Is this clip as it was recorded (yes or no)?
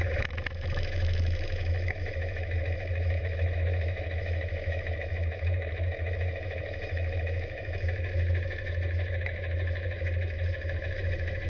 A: no